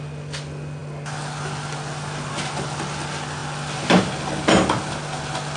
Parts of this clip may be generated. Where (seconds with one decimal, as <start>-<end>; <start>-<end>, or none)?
none